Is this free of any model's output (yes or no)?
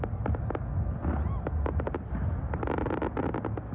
yes